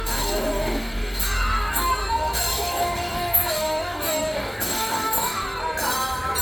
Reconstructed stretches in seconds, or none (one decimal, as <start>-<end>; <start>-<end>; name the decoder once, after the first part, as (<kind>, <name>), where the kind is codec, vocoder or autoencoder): 0.0-5.6 (codec, DAC)